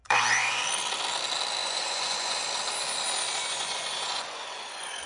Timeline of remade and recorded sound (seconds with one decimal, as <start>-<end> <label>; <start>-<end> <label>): 0.0-0.6 remade; 0.6-1.6 recorded; 1.6-2.4 remade; 2.4-3.4 recorded; 3.4-5.1 remade